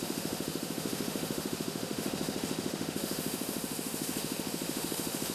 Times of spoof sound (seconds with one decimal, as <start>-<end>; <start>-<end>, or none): 0.0-5.3